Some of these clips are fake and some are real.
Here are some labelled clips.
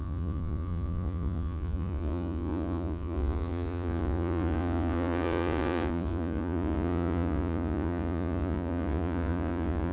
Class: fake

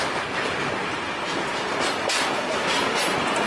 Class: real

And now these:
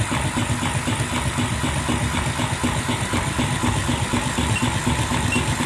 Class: real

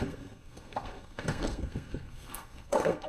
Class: fake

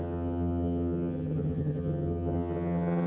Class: fake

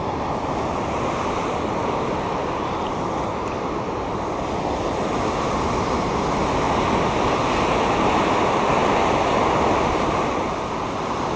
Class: real